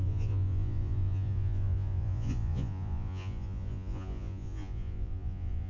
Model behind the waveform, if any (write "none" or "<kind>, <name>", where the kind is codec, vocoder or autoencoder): vocoder, Vocos